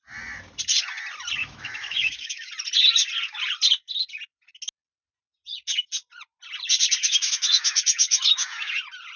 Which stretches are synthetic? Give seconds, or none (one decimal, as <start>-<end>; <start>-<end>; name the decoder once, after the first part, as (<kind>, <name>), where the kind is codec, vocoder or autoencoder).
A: 1.4-2.5 (autoencoder, DAC-VAE); 7.0-8.7